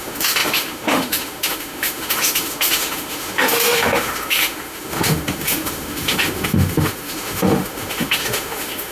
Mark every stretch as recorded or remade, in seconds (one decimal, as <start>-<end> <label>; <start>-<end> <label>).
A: 0.0-8.9 remade